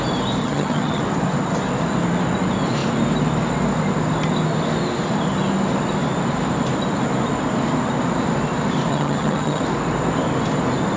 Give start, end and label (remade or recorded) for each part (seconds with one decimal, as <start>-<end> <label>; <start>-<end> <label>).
0.0-0.4 recorded; 0.4-1.0 remade; 1.0-8.9 recorded; 8.9-9.6 remade; 9.6-11.0 recorded